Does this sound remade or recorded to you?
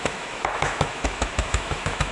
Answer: remade